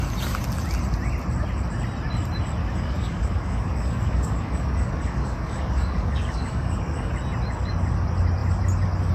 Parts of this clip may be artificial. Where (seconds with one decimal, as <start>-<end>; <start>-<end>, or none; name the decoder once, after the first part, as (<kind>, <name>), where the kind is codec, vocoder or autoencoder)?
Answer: 2.6-7.1 (codec, DAC)